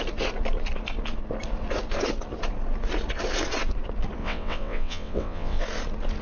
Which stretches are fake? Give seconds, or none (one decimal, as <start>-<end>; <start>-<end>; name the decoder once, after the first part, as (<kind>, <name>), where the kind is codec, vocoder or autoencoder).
4.2-5.6 (vocoder, WaveNeXt)